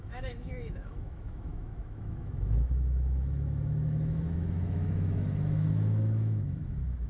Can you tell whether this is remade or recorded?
remade